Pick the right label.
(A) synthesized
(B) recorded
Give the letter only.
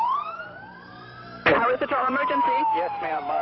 A